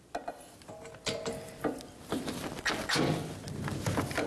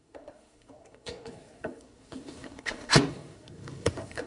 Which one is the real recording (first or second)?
first